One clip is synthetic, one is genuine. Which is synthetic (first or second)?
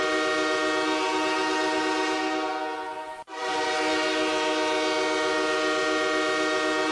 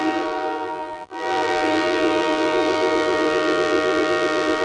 second